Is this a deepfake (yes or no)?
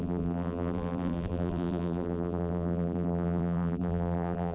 yes